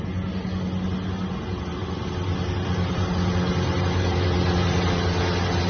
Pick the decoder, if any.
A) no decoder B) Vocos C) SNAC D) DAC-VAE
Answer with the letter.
A